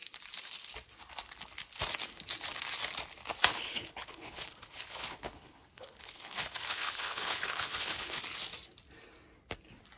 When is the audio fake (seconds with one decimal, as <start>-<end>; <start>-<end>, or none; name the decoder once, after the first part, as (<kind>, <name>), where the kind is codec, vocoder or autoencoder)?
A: 3.5-8.2 (codec, HILCodec)